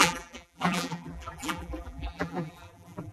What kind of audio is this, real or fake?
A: fake